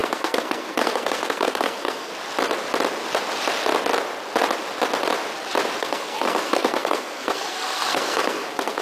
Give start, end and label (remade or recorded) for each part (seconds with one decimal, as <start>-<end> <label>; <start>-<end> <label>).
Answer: 0.0-2.1 remade; 2.1-5.8 recorded; 5.8-8.8 remade